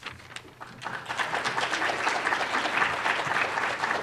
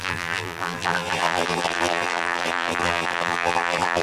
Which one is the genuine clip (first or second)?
first